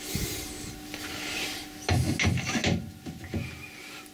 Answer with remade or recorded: recorded